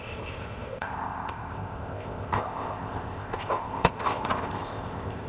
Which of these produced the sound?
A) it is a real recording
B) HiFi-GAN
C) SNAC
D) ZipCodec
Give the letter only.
D